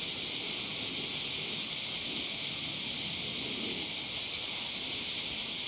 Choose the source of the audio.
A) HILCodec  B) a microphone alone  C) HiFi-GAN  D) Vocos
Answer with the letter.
B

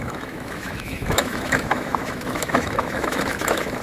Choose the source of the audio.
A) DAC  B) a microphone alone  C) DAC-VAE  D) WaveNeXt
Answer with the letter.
C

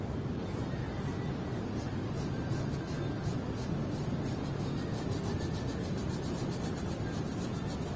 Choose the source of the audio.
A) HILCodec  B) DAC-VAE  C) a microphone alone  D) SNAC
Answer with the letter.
C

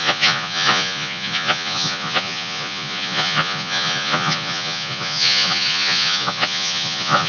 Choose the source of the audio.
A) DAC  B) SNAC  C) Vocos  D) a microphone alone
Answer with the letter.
C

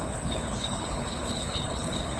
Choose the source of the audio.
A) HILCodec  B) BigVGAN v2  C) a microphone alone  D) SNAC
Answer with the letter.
A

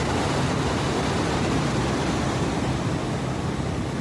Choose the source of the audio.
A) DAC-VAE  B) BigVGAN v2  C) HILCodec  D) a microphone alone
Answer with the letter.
D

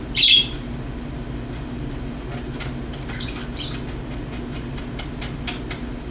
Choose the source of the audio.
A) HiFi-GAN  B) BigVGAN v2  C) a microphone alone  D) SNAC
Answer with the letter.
C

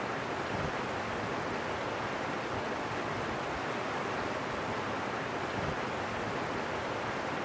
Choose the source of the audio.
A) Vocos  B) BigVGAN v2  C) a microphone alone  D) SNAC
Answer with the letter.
C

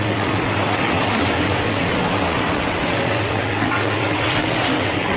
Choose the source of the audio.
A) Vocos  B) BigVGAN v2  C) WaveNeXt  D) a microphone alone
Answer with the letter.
C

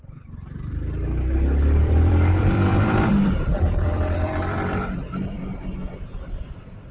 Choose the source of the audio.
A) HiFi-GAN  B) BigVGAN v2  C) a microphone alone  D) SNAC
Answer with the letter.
B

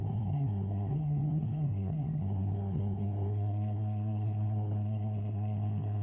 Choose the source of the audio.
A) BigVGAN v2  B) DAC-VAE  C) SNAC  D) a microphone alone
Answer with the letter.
C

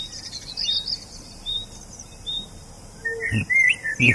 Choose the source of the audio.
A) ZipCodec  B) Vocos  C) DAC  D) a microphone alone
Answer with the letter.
D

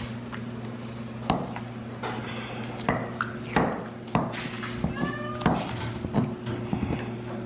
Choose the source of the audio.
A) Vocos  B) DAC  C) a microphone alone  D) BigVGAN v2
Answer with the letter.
C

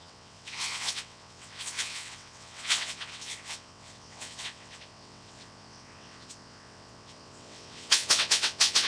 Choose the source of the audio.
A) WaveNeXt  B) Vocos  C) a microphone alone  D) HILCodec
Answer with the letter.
A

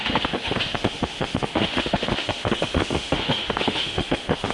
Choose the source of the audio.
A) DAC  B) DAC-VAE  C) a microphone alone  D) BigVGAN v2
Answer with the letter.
B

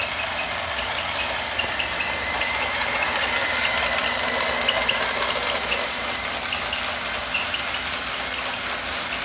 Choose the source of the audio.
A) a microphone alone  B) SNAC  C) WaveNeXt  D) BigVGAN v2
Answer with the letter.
A